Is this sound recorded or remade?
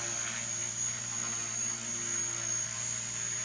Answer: recorded